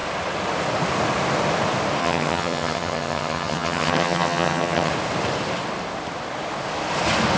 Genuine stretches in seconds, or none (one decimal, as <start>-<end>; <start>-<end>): 0.0-2.0; 4.9-7.4